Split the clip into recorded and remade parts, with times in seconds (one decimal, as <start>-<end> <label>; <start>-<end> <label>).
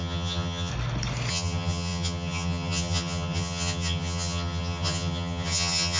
0.0-0.7 remade; 0.7-1.3 recorded; 1.3-6.0 remade